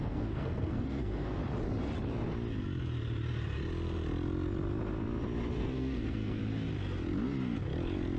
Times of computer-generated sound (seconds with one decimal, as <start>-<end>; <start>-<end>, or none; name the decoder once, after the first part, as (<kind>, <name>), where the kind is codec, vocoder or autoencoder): 0.0-1.4 (codec, SNAC); 5.6-6.4